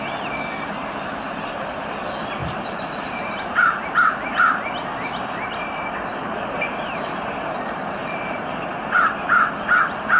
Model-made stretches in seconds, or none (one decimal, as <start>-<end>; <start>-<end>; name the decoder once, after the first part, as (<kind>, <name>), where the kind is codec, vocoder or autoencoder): 0.8-1.4 (vocoder, BigVGAN v2); 2.4-4.1; 6.1-8.8